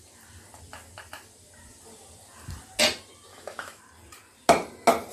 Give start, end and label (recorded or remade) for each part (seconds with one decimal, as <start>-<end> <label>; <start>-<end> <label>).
0.0-3.3 recorded; 3.3-3.8 remade; 3.8-5.1 recorded